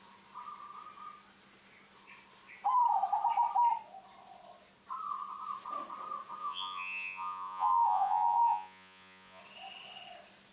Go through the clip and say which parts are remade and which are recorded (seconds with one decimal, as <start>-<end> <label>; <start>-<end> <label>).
0.0-6.4 recorded; 6.4-9.4 remade; 9.4-10.5 recorded